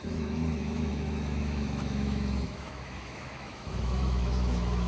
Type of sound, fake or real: fake